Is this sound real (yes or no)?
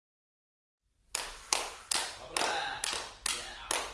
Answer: yes